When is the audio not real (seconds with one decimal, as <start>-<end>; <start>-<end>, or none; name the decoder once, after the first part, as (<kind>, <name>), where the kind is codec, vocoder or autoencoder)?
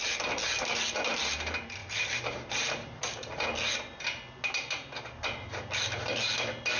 1.8-3.3 (vocoder, BigVGAN v2)